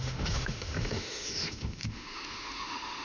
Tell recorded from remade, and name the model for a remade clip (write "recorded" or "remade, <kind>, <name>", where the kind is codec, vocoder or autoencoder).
remade, autoencoder, DAC-VAE